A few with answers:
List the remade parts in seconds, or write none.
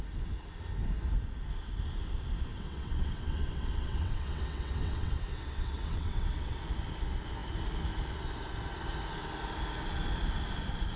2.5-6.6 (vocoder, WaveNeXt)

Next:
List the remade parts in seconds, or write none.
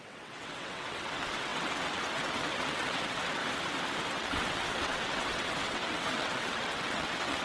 0.0-3.4 (vocoder, WaveNeXt); 4.1-7.4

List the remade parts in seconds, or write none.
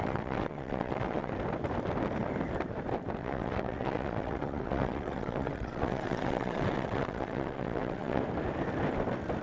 0.0-1.3 (vocoder, WaveNeXt); 3.2-8.2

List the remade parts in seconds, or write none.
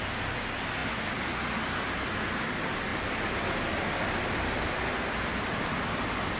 none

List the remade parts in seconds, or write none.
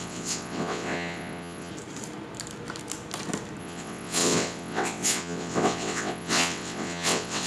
0.0-1.7 (vocoder, WaveNeXt); 3.6-7.5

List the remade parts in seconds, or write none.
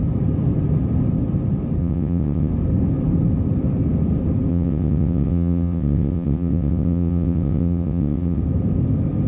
1.8-2.5 (vocoder, WaveNeXt); 4.5-8.4